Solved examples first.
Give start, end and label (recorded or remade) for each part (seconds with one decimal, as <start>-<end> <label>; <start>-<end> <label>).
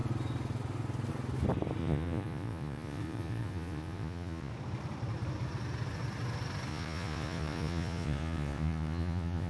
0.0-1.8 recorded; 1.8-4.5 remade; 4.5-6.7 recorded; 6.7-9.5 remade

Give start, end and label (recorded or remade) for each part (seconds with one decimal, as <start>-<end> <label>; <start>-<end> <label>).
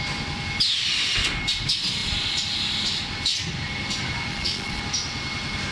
0.0-4.3 recorded; 4.3-4.8 remade; 4.8-5.7 recorded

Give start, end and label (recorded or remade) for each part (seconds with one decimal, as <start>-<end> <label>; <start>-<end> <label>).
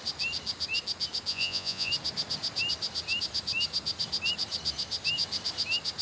0.0-1.3 recorded; 1.3-1.9 remade; 1.9-6.0 recorded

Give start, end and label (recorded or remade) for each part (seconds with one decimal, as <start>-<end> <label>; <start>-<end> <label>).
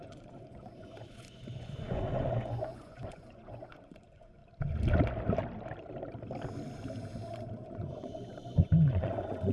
0.0-4.4 remade; 4.4-7.5 recorded; 7.5-9.5 remade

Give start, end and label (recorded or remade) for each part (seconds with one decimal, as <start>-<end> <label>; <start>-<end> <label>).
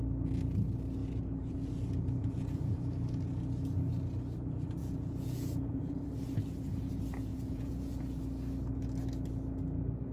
0.0-1.0 recorded; 1.0-2.9 remade; 2.9-4.8 recorded; 4.8-5.9 remade; 5.9-7.3 recorded; 7.3-8.0 remade; 8.0-10.1 recorded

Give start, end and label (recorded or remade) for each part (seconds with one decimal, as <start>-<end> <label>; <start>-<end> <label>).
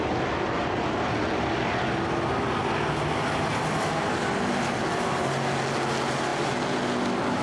0.0-7.4 recorded